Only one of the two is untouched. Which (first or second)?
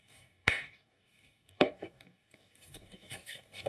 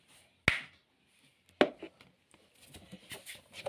second